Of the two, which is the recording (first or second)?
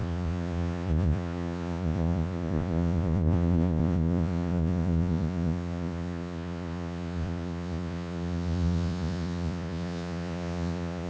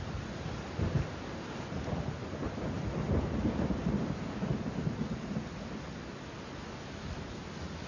second